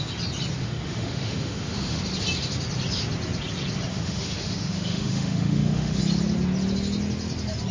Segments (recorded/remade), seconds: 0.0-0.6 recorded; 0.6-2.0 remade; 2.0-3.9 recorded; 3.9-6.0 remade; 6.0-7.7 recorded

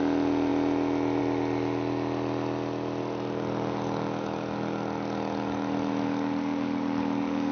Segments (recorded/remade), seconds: 0.0-3.0 recorded; 3.0-7.5 remade

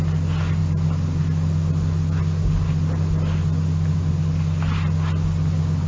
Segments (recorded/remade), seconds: 0.0-5.9 recorded

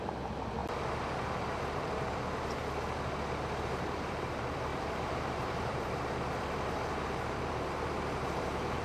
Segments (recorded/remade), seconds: 0.0-0.6 remade; 0.6-1.5 recorded; 1.5-2.6 remade; 2.6-3.6 recorded; 3.6-8.8 remade

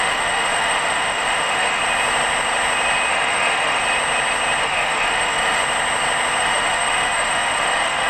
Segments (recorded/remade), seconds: 0.0-1.8 remade; 1.8-3.1 recorded; 3.1-3.8 remade; 3.8-4.6 recorded; 4.6-5.6 remade; 5.6-6.4 recorded; 6.4-8.1 remade

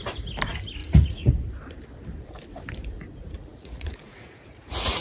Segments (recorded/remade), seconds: 0.0-0.8 recorded; 0.8-1.3 remade; 1.3-3.5 recorded; 3.5-5.0 remade